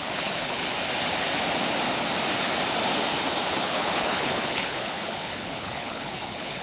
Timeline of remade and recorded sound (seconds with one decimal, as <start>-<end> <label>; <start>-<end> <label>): 0.0-0.6 remade; 0.6-3.6 recorded; 3.6-6.6 remade